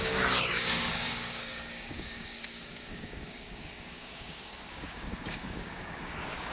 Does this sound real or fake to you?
fake